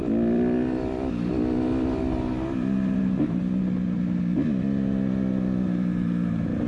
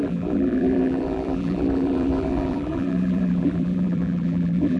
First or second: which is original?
first